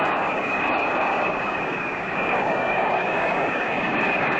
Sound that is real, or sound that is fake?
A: fake